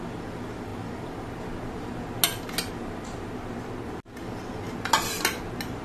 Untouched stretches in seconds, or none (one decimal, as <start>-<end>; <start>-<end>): 0.0-5.8